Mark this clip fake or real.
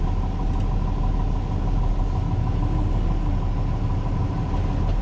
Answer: real